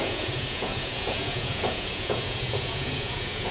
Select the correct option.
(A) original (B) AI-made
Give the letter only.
B